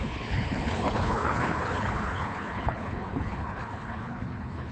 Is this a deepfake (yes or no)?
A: yes